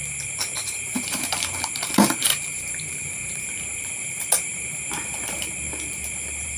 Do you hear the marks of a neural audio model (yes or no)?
yes